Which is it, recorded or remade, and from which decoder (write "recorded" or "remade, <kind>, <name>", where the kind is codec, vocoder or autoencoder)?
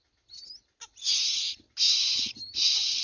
recorded